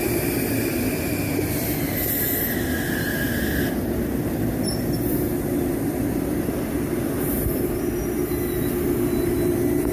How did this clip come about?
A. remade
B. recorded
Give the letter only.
B